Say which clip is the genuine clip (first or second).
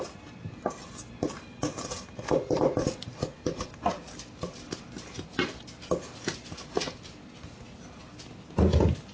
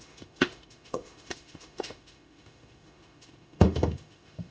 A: first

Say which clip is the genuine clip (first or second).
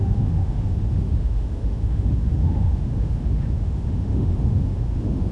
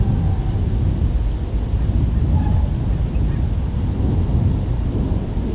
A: second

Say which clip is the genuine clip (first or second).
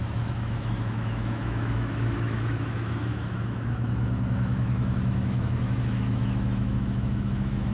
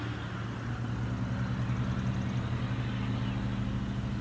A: second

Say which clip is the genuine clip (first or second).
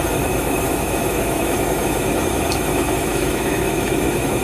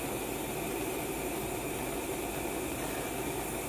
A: second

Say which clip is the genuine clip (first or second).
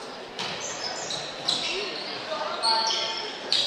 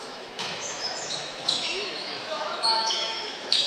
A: first